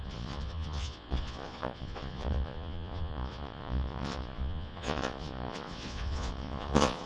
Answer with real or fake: fake